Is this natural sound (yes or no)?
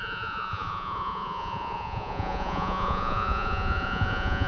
no